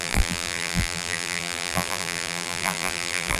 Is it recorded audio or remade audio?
remade